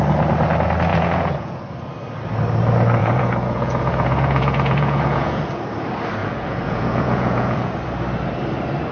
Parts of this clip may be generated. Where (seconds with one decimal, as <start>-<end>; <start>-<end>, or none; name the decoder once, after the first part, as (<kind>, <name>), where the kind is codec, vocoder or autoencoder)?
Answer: 0.9-1.6 (vocoder, Vocos); 3.0-5.6; 6.2-7.7